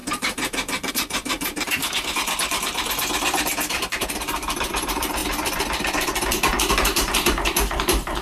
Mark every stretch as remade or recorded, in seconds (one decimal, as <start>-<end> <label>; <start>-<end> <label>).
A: 0.0-1.8 remade; 1.8-3.5 recorded; 3.5-5.2 remade; 5.2-6.7 recorded; 6.7-8.2 remade